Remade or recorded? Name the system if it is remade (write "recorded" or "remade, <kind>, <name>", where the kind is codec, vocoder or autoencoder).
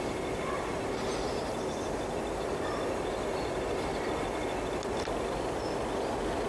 recorded